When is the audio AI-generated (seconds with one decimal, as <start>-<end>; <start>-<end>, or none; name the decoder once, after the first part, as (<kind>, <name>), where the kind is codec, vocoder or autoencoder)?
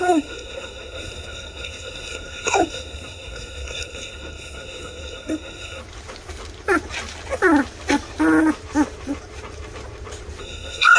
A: 0.0-5.8 (codec, SNAC); 10.4-11.0